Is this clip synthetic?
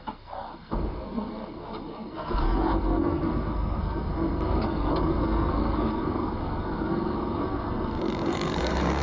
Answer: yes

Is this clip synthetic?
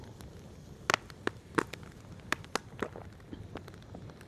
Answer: no